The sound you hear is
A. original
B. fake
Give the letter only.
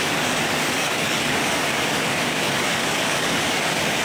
B